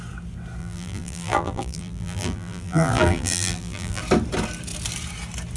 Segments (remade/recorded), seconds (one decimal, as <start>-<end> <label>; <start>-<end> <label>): 0.0-0.6 recorded; 0.6-4.0 remade; 4.0-5.6 recorded